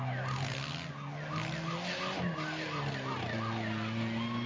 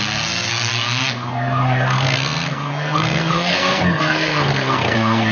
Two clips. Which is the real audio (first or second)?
first